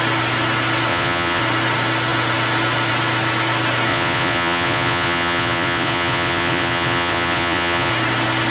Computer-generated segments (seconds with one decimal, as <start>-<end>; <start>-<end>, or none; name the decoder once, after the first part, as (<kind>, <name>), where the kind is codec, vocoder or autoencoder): 0.9-1.4 (vocoder, Vocos); 3.9-7.9